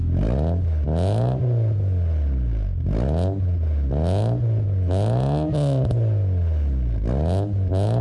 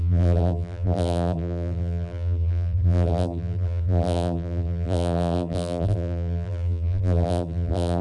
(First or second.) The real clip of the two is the first